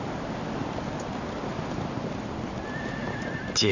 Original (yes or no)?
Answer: yes